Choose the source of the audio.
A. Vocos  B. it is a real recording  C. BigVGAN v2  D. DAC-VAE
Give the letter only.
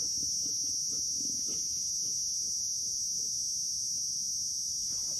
B